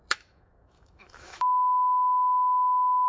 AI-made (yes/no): yes